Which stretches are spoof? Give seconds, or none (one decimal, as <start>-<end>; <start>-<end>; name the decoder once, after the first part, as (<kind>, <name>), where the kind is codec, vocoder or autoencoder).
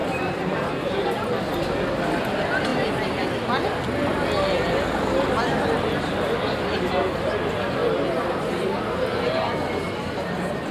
0.0-0.9 (vocoder, BigVGAN v2)